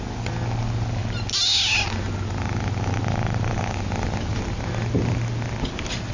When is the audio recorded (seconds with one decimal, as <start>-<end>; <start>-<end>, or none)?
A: 0.0-6.1